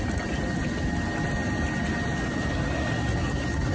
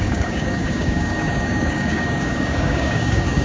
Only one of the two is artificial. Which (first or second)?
second